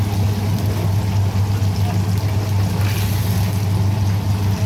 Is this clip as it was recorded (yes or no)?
yes